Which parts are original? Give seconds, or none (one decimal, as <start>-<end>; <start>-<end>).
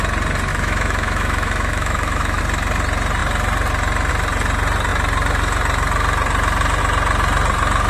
0.0-0.5; 2.4-7.9